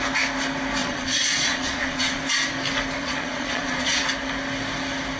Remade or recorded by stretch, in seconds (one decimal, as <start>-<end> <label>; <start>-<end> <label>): 0.0-0.8 recorded; 0.8-2.2 remade; 2.2-3.0 recorded; 3.0-4.0 remade; 4.0-5.2 recorded

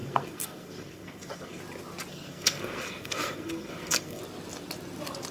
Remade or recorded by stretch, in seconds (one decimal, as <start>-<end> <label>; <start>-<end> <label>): 0.0-1.6 remade; 1.6-2.1 recorded; 2.1-4.2 remade; 4.2-5.3 recorded

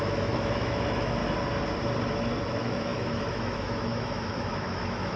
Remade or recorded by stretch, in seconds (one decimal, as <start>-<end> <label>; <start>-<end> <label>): 0.0-1.2 remade; 1.2-2.5 recorded; 2.5-5.2 remade

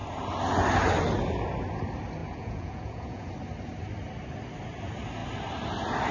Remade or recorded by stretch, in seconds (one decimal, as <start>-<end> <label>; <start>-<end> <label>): 0.0-2.2 recorded; 2.2-3.3 remade; 3.3-6.1 recorded

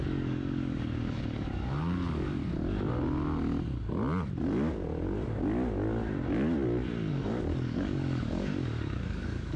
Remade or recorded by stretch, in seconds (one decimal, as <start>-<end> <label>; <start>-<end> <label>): 0.0-2.4 remade; 2.4-7.1 recorded; 7.1-9.6 remade

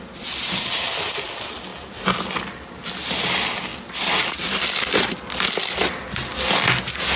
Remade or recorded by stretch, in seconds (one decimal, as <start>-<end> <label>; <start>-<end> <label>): 0.0-7.2 recorded

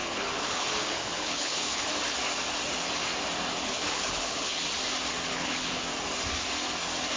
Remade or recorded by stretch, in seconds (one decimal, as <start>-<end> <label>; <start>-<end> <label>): 0.0-1.9 remade; 1.9-3.7 recorded; 3.7-4.6 remade; 4.6-5.3 recorded; 5.3-5.8 remade; 5.8-7.2 recorded

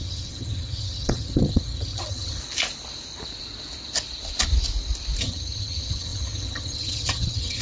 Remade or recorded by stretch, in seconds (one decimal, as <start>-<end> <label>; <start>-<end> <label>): 0.0-2.4 remade; 2.4-5.2 recorded; 5.2-7.6 remade